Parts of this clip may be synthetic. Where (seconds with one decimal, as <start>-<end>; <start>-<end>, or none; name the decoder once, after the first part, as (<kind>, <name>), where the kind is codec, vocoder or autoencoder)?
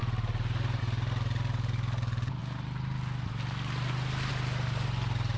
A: none